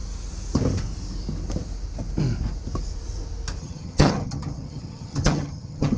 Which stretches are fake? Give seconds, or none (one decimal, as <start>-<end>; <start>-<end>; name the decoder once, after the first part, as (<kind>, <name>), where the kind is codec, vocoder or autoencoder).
3.6-6.0 (vocoder, HiFi-GAN)